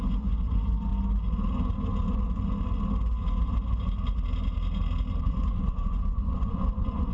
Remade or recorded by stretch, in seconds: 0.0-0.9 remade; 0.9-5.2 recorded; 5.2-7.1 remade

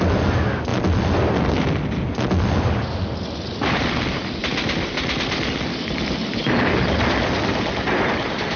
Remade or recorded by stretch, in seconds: 0.0-8.6 recorded

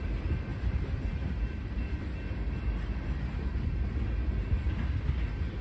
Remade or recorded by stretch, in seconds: 0.0-0.5 recorded; 0.5-2.0 remade; 2.0-5.6 recorded